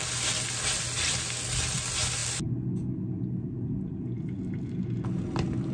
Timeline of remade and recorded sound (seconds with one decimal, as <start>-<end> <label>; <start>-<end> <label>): 0.0-5.7 recorded